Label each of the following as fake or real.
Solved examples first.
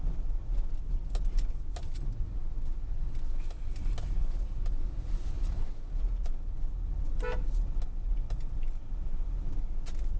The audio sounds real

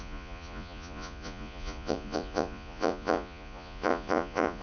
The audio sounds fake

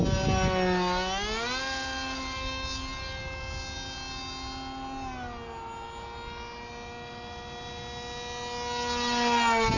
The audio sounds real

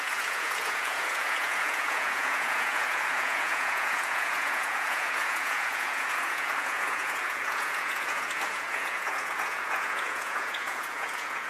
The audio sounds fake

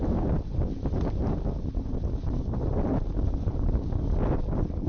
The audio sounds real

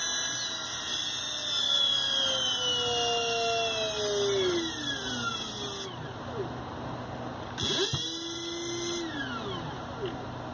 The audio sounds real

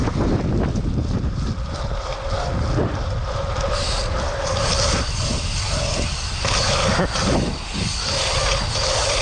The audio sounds real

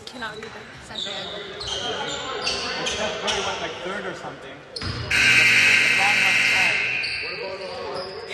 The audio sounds fake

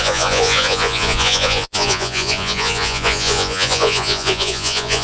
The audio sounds fake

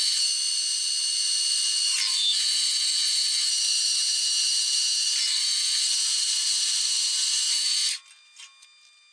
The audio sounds real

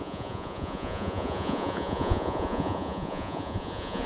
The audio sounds fake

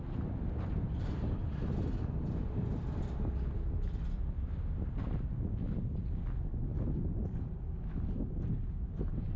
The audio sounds real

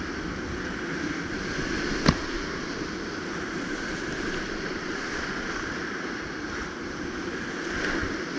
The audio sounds real